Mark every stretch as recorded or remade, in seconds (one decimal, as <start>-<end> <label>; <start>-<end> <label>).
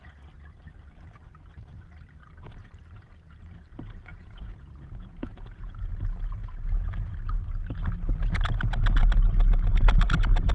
0.0-4.1 recorded; 4.1-5.9 remade; 5.9-10.5 recorded